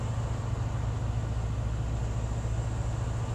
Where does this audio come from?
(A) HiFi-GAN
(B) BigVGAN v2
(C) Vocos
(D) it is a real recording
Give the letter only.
D